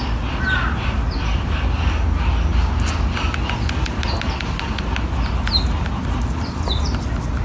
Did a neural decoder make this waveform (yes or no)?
no